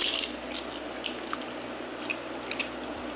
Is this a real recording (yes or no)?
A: yes